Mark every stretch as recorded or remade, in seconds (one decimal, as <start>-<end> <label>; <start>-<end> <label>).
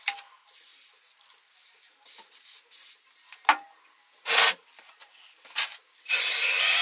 0.0-6.8 recorded